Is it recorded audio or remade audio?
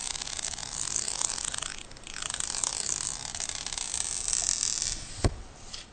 recorded